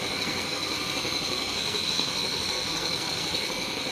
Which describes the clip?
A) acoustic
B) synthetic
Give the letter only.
B